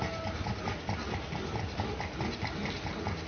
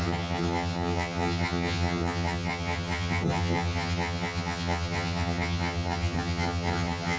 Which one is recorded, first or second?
first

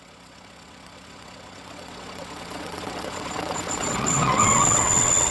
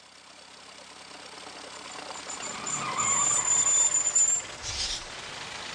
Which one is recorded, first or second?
second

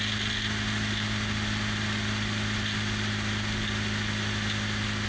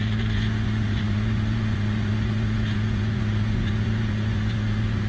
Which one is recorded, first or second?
first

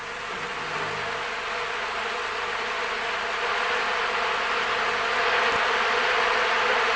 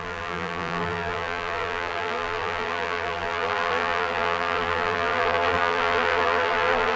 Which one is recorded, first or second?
first